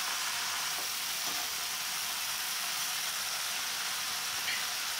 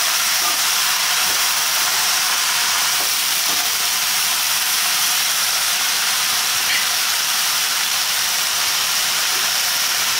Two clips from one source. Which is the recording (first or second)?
first